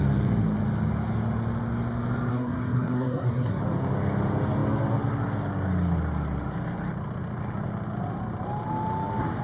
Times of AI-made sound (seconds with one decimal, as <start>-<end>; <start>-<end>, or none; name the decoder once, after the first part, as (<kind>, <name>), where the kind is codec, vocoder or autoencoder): 2.3-3.6 (codec, SNAC)